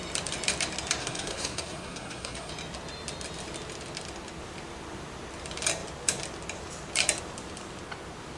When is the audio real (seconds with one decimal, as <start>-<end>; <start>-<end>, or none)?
0.0-1.0; 2.5-8.4